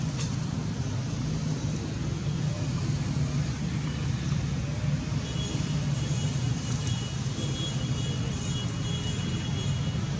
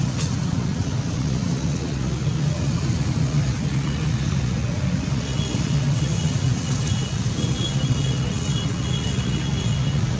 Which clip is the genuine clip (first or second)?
first